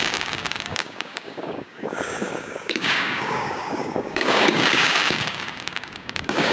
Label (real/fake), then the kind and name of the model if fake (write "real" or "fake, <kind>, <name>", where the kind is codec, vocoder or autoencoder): fake, codec, DAC